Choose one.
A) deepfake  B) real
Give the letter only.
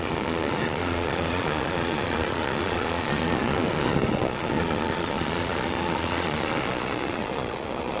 A